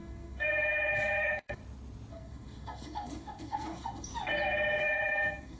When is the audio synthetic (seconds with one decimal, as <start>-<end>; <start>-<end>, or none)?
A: 0.0-1.6; 2.1-4.1; 4.8-5.6